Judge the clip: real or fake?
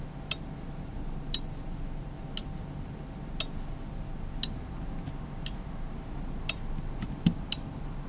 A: real